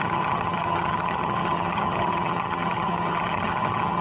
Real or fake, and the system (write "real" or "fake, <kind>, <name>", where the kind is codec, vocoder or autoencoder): fake, vocoder, HiFi-GAN